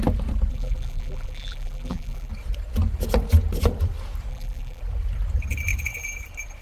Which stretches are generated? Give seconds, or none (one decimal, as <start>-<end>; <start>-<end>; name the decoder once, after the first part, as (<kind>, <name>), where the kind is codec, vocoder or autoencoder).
0.5-2.3 (vocoder, BigVGAN v2); 4.3-4.8

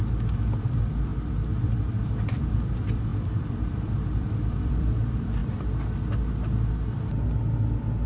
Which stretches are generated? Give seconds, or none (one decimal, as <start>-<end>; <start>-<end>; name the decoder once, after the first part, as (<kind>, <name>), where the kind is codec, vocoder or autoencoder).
0.0-5.4 (vocoder, BigVGAN v2)

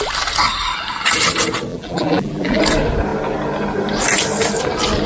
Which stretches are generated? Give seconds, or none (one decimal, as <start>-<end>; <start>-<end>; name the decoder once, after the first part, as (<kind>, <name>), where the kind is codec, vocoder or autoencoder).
1.7-2.6 (vocoder, BigVGAN v2)